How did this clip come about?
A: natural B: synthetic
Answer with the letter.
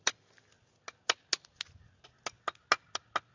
A